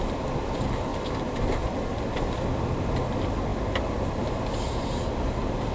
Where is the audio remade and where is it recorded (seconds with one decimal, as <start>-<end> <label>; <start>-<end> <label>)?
0.0-5.7 recorded